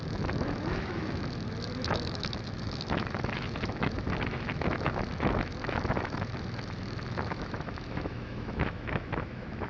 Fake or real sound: fake